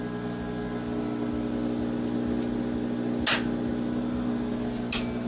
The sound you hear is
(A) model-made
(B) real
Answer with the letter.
B